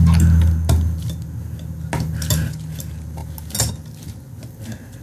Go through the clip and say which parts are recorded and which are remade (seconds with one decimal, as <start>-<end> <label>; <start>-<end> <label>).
0.0-5.0 recorded